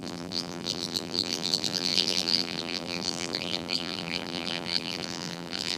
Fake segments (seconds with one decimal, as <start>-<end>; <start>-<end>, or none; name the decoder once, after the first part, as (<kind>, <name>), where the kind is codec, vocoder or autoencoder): 0.0-5.8 (vocoder, BigVGAN v2)

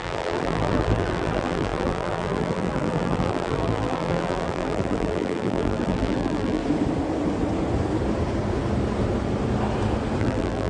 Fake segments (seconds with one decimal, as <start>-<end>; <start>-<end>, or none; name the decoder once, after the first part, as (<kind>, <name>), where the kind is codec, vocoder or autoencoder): 0.0-6.6 (vocoder, BigVGAN v2); 10.2-10.7

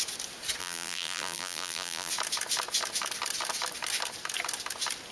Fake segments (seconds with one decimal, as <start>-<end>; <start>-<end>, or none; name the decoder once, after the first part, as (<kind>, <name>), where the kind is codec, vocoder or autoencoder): 0.6-2.1 (vocoder, BigVGAN v2)

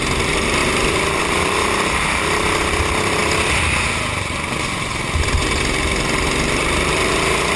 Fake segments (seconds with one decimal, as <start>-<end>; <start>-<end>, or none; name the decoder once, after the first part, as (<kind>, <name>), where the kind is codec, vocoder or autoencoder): 0.0-3.2 (vocoder, BigVGAN v2); 6.4-7.6

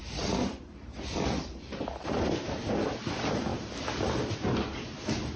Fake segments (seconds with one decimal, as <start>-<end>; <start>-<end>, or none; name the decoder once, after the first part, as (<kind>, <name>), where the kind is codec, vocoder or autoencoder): 0.0-2.9 (vocoder, BigVGAN v2); 3.5-4.3

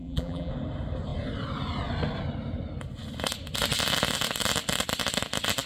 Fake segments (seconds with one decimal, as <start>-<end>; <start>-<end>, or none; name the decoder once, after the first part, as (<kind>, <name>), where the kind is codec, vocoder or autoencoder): 0.0-0.5 (vocoder, BigVGAN v2)

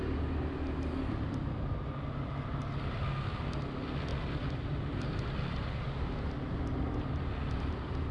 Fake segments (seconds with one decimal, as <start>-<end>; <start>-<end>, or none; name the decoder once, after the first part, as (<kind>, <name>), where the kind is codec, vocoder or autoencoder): 4.1-6.4 (vocoder, BigVGAN v2)